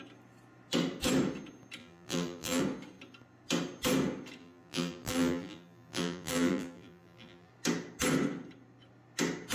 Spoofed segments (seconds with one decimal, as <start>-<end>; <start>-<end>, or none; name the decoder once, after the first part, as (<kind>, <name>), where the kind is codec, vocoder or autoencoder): 1.8-2.6 (vocoder, BigVGAN v2); 4.4-7.5